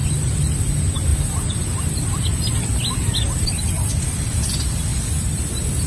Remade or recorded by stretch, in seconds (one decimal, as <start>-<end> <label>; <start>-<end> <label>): 0.0-0.6 remade; 0.6-1.1 recorded; 1.1-3.9 remade; 3.9-4.9 recorded; 4.9-5.9 remade